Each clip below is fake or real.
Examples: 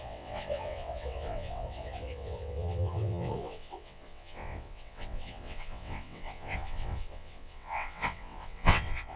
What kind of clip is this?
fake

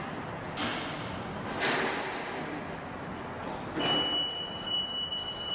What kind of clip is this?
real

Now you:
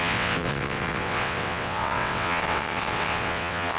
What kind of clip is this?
fake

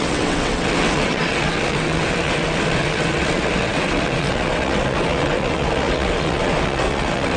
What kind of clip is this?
fake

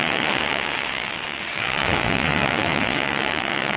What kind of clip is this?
fake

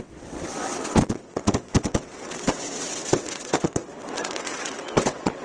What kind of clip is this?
fake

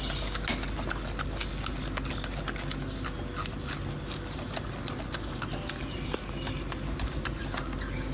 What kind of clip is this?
real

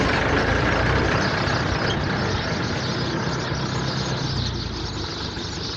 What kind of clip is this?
real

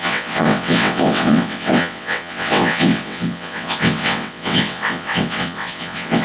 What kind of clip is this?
fake